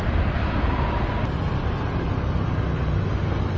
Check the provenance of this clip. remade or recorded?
recorded